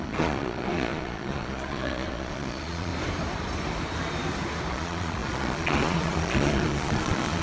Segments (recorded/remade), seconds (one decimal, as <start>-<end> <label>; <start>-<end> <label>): 0.0-2.9 remade; 2.9-4.7 recorded; 4.7-7.4 remade